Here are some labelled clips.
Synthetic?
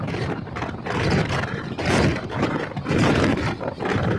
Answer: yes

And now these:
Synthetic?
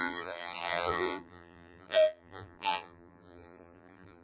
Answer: yes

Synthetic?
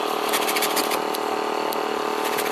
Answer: no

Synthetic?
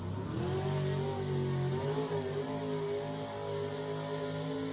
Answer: no